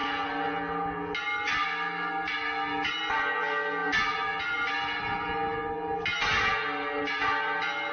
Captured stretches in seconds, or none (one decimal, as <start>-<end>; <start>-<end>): 0.0-7.9